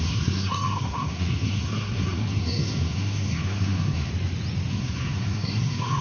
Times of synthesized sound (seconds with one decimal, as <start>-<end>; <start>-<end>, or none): 0.0-4.1; 4.7-6.0